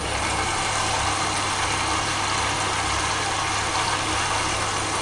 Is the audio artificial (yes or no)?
no